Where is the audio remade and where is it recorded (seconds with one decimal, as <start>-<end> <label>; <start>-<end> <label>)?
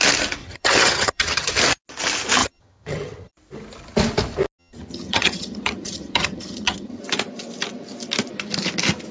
0.0-0.4 recorded; 0.4-1.5 remade; 1.5-2.4 recorded; 2.4-3.3 remade; 3.3-4.6 recorded; 4.6-7.0 remade; 7.0-9.1 recorded